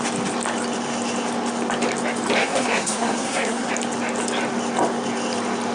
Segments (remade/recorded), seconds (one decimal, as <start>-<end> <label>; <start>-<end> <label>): 0.0-2.4 recorded; 2.4-3.7 remade; 3.7-5.7 recorded